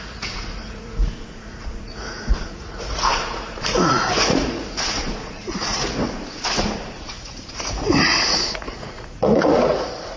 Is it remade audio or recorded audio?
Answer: remade